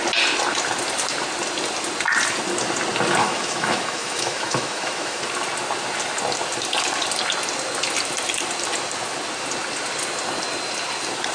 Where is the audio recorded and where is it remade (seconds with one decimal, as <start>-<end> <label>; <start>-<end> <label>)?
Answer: 0.0-3.2 recorded; 3.2-5.2 remade; 5.2-11.3 recorded

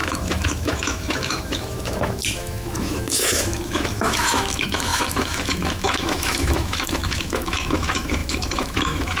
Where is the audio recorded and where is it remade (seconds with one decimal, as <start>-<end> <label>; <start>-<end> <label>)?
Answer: 0.0-9.2 remade

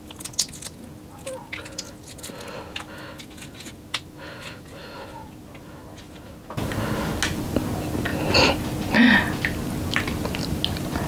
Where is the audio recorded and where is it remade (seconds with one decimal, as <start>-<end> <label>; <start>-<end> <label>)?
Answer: 0.0-11.1 recorded